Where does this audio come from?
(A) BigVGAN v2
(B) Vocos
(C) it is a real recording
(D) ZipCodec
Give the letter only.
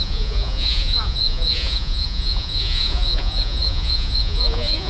B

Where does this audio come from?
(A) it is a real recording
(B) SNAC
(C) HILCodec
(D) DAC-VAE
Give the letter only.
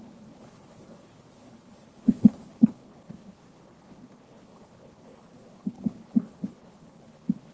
C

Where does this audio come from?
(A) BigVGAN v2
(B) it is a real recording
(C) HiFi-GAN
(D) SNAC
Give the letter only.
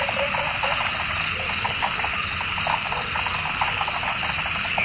B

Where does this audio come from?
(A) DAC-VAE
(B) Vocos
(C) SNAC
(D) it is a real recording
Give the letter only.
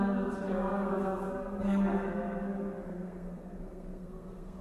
C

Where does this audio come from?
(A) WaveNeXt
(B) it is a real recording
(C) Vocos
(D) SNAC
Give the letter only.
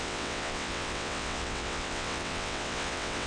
A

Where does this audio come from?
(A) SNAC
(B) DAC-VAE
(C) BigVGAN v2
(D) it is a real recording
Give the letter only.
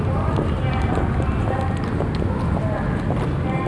D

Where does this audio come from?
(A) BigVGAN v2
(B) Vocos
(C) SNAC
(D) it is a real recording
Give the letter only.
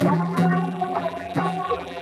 A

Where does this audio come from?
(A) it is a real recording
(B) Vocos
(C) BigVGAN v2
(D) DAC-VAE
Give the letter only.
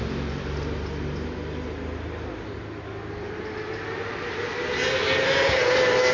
A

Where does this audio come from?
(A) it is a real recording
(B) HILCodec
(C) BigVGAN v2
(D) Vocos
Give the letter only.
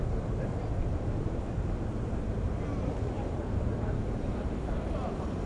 C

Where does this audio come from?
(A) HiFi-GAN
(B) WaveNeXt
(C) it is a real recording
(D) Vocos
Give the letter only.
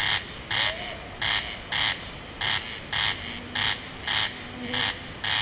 C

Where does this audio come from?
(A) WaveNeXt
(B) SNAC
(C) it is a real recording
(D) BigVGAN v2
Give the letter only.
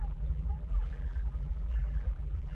D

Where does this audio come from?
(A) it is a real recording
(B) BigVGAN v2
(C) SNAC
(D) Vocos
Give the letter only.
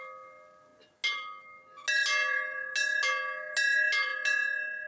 A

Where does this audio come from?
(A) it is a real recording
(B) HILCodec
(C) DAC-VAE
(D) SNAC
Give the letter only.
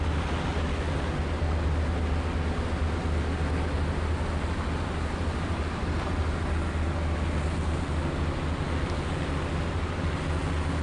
A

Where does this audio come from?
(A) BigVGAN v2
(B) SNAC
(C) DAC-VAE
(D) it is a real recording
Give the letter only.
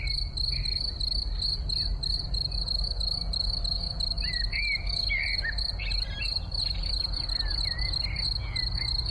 D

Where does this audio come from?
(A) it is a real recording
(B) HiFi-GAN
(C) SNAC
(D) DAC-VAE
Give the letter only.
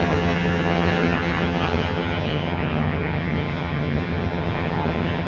B